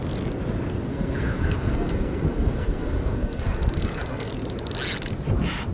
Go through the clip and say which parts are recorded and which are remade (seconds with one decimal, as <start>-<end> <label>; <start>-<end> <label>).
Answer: 0.0-0.9 recorded; 0.9-4.3 remade; 4.3-5.7 recorded